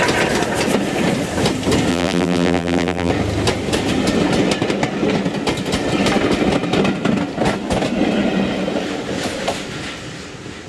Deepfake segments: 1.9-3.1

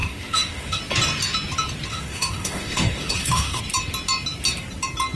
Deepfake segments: 0.0-0.8; 1.9-3.6

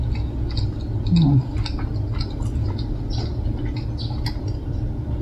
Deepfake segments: none

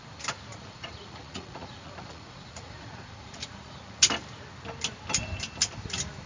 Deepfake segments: 0.5-4.0

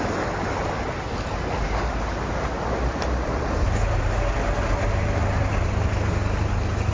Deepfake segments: none

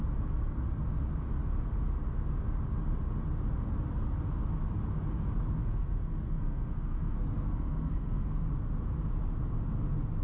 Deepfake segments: 5.6-8.5